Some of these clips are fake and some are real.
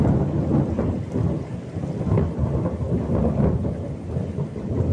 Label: real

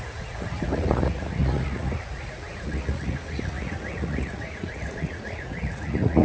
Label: fake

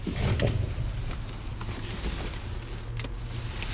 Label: real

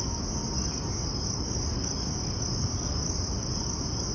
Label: real